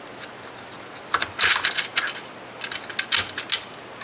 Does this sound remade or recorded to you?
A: recorded